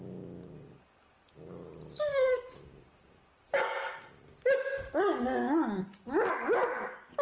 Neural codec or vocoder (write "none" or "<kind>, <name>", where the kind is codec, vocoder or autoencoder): none